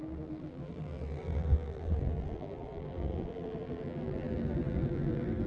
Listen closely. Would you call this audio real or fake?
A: fake